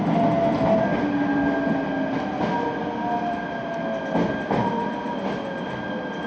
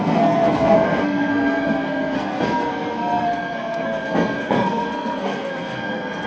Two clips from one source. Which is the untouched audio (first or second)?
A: first